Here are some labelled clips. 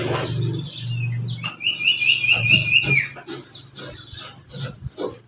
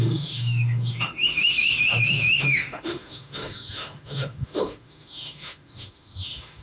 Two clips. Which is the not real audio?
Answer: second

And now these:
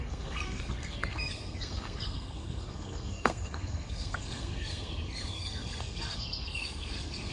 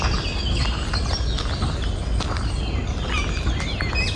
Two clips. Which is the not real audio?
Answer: first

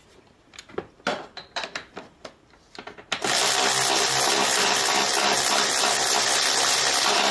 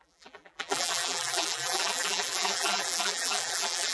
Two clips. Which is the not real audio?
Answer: second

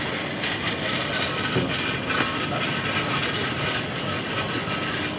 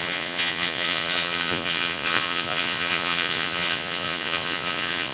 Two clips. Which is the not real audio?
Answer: second